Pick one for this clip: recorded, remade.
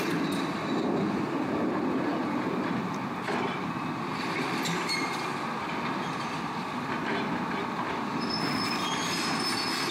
recorded